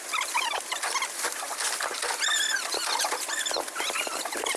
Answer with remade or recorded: recorded